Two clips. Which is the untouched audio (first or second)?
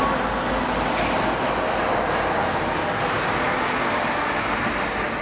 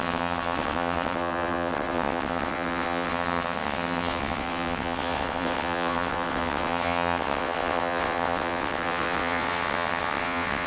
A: first